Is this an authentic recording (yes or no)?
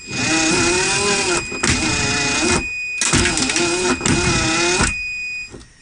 yes